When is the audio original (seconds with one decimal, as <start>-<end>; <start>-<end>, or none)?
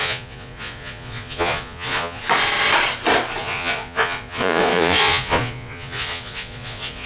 2.2-3.4